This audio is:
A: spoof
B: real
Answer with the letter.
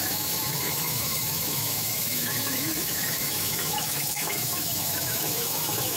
A